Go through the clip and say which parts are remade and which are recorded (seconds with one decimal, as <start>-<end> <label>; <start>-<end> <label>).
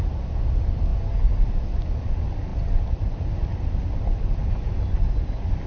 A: 0.0-0.9 remade; 0.9-1.5 recorded; 1.5-4.4 remade; 4.4-5.1 recorded; 5.1-5.7 remade